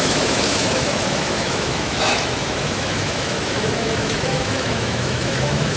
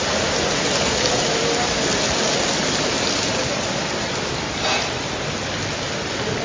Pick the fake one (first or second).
first